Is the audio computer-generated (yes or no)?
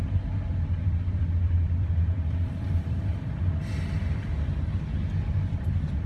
yes